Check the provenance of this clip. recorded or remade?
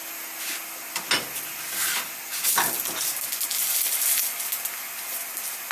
recorded